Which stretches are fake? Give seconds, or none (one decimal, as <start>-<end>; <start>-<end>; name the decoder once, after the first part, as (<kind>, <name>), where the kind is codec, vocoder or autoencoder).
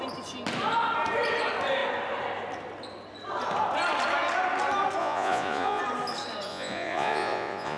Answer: 5.0-5.8 (vocoder, Vocos); 6.5-7.8